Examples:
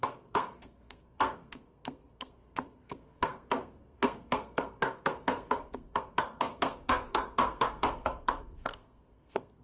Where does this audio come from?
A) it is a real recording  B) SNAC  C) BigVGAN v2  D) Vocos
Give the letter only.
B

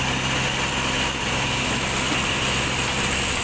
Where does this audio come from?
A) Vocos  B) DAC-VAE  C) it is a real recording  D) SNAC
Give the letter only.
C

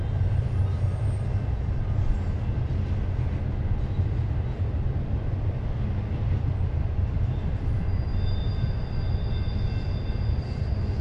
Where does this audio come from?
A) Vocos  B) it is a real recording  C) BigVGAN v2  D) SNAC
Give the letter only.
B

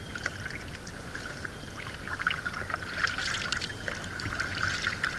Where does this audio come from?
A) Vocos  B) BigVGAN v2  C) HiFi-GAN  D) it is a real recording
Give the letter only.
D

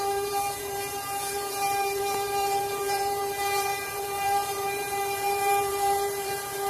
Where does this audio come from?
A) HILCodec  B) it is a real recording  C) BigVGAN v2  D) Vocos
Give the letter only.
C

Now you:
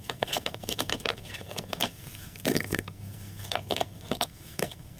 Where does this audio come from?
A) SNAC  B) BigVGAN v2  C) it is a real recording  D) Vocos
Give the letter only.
A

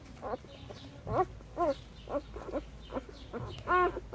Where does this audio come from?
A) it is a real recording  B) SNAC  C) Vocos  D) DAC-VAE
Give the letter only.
A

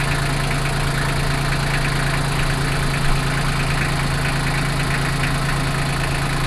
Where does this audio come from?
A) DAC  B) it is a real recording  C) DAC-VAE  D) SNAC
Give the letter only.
B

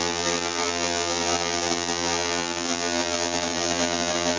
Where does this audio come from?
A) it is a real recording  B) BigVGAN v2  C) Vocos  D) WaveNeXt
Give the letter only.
B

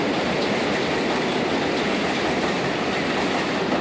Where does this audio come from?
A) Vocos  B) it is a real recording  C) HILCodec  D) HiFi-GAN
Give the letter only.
B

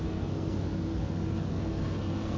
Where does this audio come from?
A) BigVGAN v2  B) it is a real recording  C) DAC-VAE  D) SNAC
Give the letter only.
D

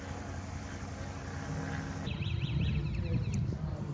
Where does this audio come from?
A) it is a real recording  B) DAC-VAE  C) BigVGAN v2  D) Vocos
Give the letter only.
A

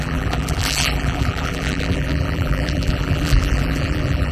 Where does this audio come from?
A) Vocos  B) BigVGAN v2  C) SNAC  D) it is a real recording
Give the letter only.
B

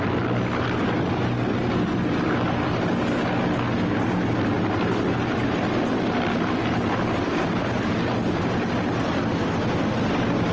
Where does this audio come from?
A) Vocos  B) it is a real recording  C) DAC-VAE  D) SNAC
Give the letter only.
B